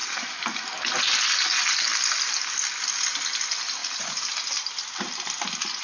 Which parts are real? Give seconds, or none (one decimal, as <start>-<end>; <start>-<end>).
0.0-5.8